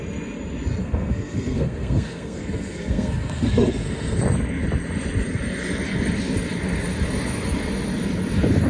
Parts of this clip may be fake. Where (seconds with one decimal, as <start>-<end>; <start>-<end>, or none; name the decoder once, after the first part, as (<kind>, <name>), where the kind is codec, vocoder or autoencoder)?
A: 0.8-4.2 (codec, SNAC)